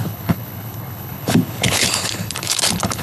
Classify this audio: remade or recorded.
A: remade